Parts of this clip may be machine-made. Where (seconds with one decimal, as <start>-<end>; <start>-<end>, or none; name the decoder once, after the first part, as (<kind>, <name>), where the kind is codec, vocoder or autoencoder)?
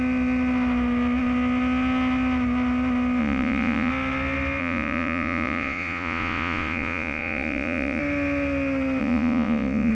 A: 3.2-3.9 (vocoder, Vocos); 4.6-8.0; 9.0-9.9